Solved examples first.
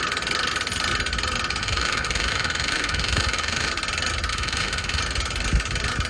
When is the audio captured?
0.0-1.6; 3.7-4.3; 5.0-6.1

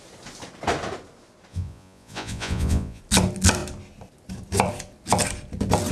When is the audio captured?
0.0-1.5; 3.0-5.9

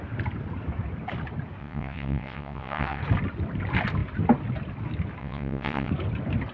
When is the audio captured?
0.0-1.6; 3.0-5.2; 5.9-6.5